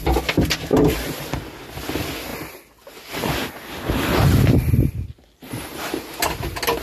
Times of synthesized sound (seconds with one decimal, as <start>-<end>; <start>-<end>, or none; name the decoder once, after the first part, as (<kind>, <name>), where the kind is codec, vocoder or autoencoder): none